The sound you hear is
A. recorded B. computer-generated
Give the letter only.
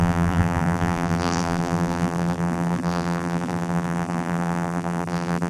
B